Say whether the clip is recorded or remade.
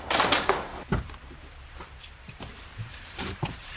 remade